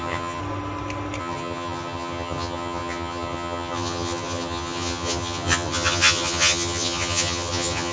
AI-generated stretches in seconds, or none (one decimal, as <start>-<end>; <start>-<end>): 0.0-0.4; 1.2-7.9